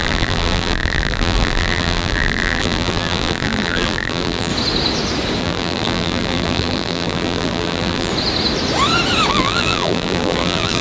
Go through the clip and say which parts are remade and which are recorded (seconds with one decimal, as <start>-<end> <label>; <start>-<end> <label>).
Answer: 0.0-4.5 remade; 4.5-5.4 recorded; 5.4-8.1 remade; 8.1-9.3 recorded; 9.3-10.8 remade